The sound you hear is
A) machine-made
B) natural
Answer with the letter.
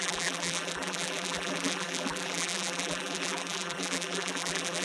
A